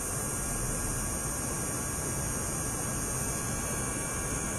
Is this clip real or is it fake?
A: real